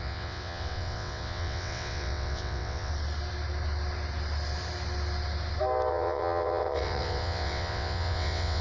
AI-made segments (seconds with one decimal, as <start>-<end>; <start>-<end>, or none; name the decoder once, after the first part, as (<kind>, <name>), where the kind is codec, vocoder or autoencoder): 0.0-2.9 (vocoder, WaveNeXt); 5.9-8.6